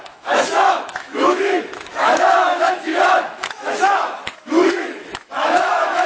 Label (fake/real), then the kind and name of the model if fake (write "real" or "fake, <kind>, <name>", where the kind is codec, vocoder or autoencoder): fake, autoencoder, DAC-VAE